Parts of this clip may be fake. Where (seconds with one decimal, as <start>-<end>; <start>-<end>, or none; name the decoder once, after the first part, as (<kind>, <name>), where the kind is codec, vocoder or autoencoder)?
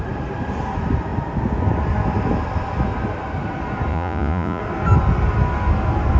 3.9-4.6 (vocoder, Vocos)